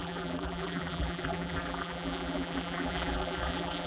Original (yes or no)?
no